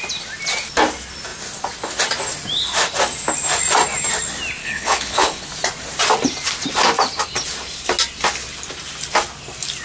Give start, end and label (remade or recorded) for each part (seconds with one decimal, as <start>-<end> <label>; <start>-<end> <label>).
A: 0.0-4.6 recorded; 4.6-5.4 remade; 5.4-9.8 recorded